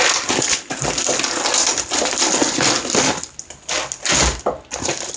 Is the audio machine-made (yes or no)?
no